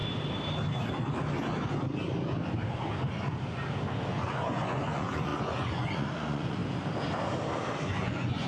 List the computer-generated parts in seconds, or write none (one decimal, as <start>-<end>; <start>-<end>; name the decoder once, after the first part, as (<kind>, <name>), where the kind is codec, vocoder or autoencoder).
4.1-6.6 (vocoder, Vocos); 7.8-8.5